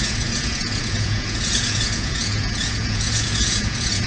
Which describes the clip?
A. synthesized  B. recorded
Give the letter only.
A